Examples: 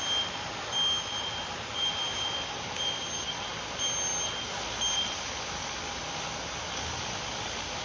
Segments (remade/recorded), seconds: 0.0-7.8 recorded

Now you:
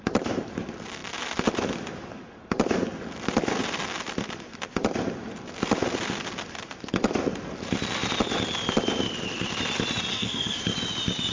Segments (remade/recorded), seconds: 0.0-10.1 recorded; 10.1-10.6 remade; 10.6-11.3 recorded

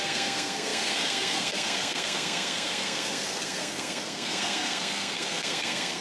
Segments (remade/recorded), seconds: 0.0-6.0 remade

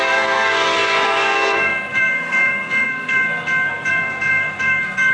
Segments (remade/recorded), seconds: 0.0-5.1 remade

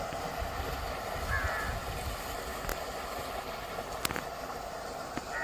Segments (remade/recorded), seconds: 0.0-5.4 recorded

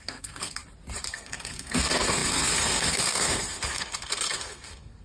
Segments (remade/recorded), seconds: 0.0-0.6 remade; 0.6-1.1 recorded; 1.1-5.0 remade

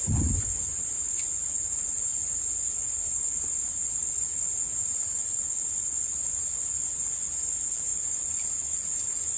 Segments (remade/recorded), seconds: 0.0-9.4 recorded